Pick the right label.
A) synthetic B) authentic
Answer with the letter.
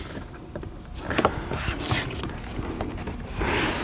B